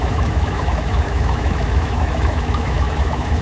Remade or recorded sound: remade